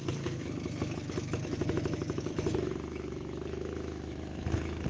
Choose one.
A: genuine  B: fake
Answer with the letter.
B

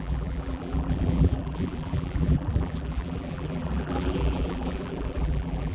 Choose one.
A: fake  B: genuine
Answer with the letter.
A